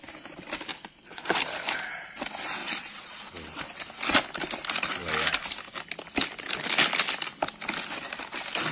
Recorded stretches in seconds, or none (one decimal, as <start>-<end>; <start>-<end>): 0.0-0.7; 1.4-2.6; 3.3-8.7